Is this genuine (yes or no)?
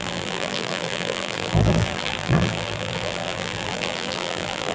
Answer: no